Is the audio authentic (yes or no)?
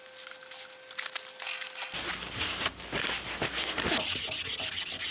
yes